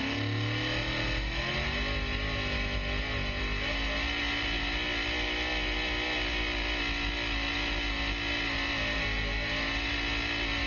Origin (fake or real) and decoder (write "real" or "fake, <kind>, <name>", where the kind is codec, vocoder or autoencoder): real